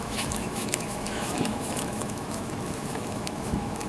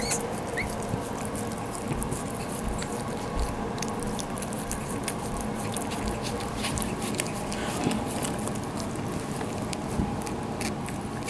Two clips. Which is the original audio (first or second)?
second